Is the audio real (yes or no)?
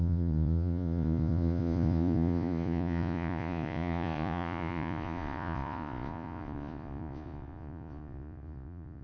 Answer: no